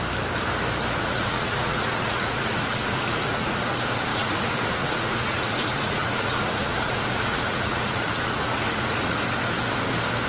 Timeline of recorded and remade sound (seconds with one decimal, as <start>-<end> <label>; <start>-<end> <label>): 0.0-1.0 recorded; 1.0-3.6 remade; 3.6-4.1 recorded; 4.1-9.2 remade; 9.2-10.3 recorded